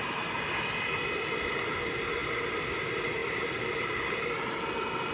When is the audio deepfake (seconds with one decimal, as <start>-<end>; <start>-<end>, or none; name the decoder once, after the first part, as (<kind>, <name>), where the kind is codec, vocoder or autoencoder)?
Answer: none